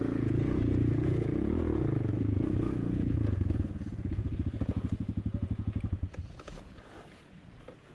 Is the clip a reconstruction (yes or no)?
yes